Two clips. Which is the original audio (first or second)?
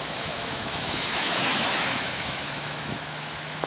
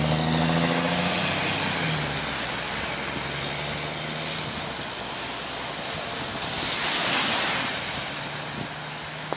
second